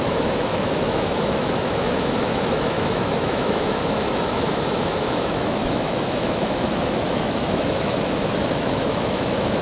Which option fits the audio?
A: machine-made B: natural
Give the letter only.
A